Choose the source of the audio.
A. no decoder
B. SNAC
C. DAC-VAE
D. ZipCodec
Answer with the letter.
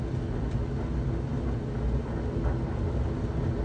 A